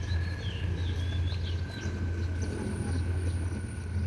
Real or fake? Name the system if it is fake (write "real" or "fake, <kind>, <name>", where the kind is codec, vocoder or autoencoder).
real